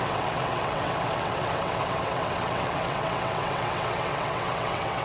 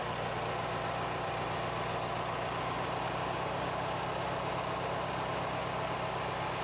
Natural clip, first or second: second